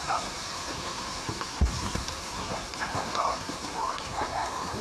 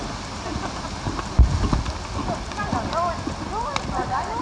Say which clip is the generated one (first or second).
first